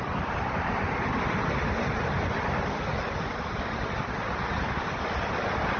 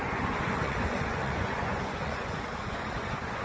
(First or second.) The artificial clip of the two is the second